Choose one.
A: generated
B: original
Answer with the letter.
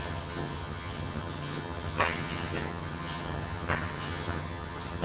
A